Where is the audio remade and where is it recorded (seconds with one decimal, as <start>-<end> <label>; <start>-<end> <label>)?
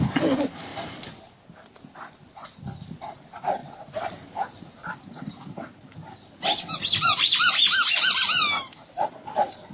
0.0-0.7 recorded; 0.7-1.3 remade; 1.3-9.7 recorded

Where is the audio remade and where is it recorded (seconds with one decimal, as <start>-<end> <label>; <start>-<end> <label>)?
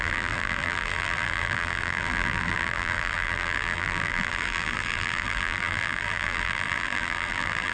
0.0-7.7 remade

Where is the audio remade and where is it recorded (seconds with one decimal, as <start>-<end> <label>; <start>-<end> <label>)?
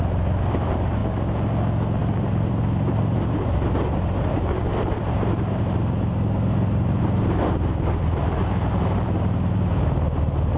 0.0-1.0 remade; 1.0-2.0 recorded; 2.0-10.6 remade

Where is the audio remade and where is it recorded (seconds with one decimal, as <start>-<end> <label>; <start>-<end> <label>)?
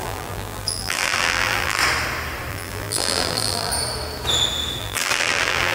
0.0-1.8 remade; 1.8-2.5 recorded; 2.5-3.7 remade; 3.7-4.8 recorded; 4.8-5.7 remade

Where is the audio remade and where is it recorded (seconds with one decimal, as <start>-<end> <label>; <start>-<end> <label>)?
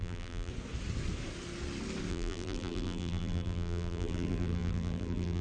0.0-0.5 remade; 0.5-2.1 recorded; 2.1-5.4 remade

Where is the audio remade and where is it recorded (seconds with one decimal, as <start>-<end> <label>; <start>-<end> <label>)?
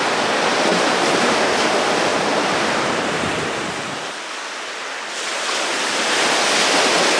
0.0-0.7 recorded; 0.7-1.4 remade; 1.4-2.1 recorded; 2.1-4.0 remade; 4.0-5.3 recorded; 5.3-6.0 remade; 6.0-7.2 recorded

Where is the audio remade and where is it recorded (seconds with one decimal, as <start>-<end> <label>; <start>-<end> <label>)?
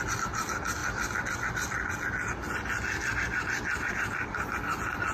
0.0-5.1 recorded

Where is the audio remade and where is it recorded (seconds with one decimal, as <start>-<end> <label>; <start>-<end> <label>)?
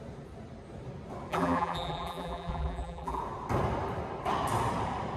0.0-1.3 recorded; 1.3-3.2 remade; 3.2-5.2 recorded